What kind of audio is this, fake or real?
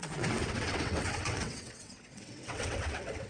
fake